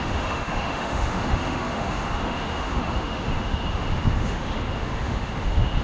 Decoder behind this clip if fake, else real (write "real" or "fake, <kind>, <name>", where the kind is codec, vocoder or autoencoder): fake, autoencoder, DAC-VAE